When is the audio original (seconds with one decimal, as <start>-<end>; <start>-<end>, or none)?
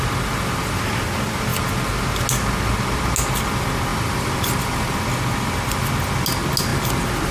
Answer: 0.0-3.9; 5.0-7.3